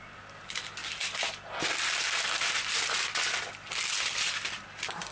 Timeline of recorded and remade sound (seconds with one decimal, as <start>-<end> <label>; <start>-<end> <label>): 0.0-5.1 recorded